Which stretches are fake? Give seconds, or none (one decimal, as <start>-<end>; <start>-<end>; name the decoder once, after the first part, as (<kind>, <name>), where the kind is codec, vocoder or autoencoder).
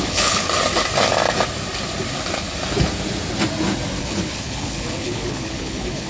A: 0.0-0.4 (codec, HILCodec); 4.0-6.1